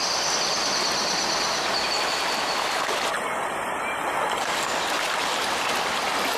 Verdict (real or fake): real